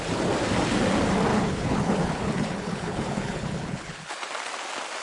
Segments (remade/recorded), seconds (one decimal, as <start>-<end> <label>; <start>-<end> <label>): 0.0-1.3 recorded; 1.3-4.3 remade; 4.3-5.0 recorded